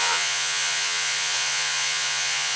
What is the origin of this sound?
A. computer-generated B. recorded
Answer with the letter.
A